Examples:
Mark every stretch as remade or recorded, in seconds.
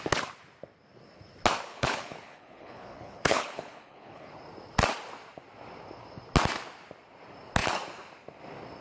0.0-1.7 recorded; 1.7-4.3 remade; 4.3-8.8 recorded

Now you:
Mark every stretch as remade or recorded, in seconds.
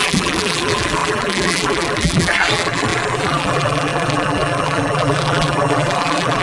0.0-6.4 remade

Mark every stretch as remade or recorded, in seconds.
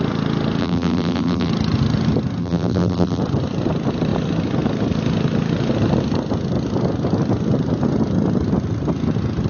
0.0-0.6 recorded; 0.6-1.5 remade; 1.5-2.4 recorded; 2.4-3.2 remade; 3.2-9.5 recorded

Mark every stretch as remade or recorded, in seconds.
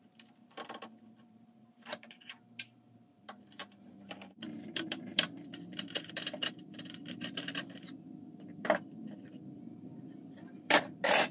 0.0-11.3 remade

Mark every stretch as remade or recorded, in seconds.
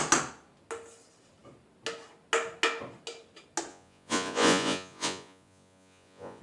0.0-3.7 recorded; 3.7-6.4 remade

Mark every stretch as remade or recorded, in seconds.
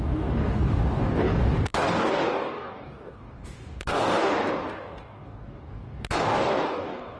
0.0-7.2 remade